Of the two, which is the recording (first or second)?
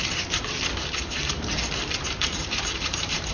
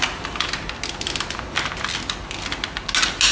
second